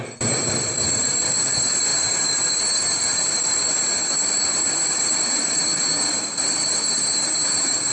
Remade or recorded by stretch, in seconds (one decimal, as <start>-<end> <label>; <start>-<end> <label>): 0.0-7.9 recorded